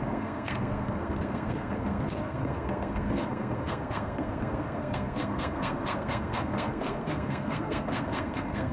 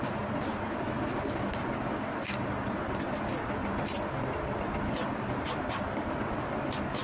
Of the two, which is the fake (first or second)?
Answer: first